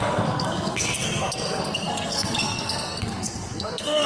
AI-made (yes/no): yes